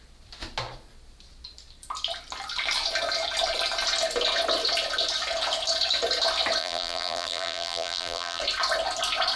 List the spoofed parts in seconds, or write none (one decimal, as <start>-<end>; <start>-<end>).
6.6-8.4